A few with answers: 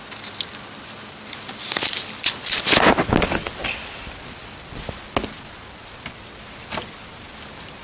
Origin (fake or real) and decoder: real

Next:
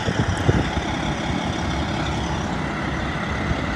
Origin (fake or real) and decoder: real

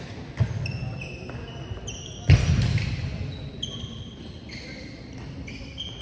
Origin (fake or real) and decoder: real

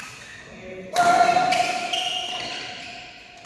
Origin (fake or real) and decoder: real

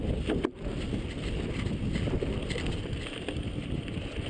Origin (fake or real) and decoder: real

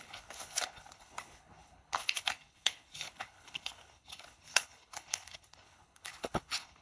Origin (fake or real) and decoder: fake, codec, HILCodec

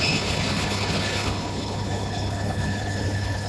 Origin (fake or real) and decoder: fake, codec, HILCodec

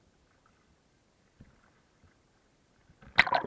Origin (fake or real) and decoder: real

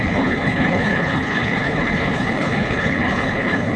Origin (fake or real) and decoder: fake, codec, HILCodec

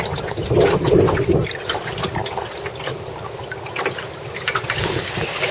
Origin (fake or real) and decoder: real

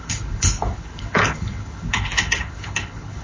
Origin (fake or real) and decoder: fake, codec, HILCodec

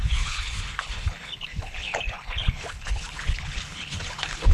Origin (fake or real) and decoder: fake, codec, HILCodec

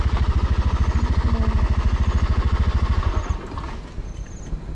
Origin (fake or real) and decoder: real